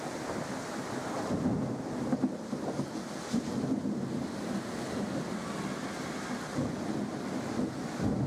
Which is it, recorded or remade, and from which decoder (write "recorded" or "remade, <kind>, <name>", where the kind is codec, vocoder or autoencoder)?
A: recorded